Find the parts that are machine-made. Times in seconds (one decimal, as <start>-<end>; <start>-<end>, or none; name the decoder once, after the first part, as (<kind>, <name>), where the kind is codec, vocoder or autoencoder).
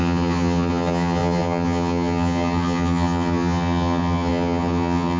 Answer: 0.0-5.2 (vocoder, HiFi-GAN)